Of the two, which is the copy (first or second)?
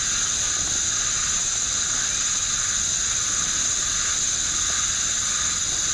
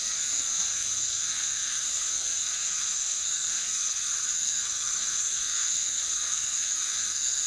second